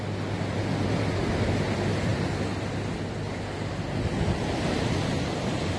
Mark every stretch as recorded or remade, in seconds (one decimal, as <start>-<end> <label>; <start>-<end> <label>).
0.0-5.8 recorded